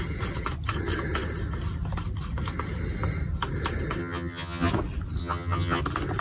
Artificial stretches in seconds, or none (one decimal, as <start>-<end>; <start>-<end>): 4.0-4.7; 5.2-5.8